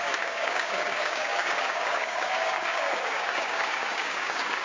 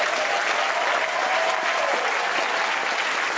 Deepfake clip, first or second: first